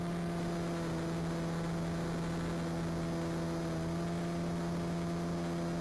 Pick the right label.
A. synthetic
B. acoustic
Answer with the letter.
B